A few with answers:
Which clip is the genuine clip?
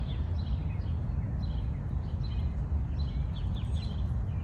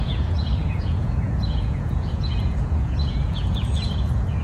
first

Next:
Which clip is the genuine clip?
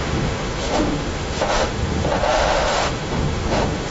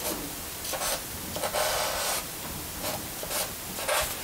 second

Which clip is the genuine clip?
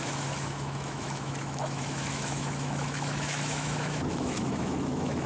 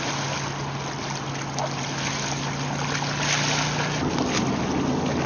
second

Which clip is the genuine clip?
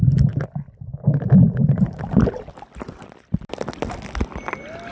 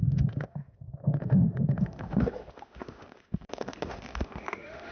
first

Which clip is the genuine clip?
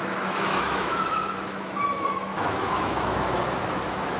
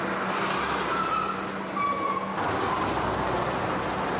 second